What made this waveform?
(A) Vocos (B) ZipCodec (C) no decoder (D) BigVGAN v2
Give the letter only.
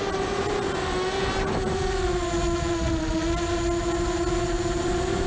C